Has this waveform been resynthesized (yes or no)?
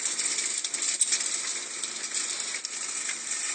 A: no